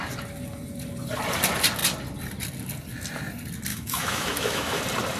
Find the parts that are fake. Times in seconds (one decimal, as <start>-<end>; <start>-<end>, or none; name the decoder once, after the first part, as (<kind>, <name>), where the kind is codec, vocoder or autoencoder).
3.7-4.8 (autoencoder, DAC-VAE)